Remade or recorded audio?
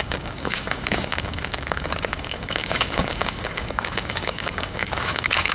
remade